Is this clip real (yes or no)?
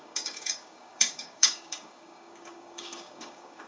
no